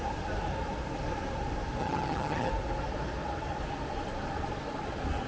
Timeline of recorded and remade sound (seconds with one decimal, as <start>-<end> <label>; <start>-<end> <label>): 0.0-1.8 recorded; 1.8-2.5 remade; 2.5-5.3 recorded